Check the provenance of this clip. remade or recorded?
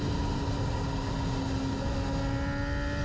recorded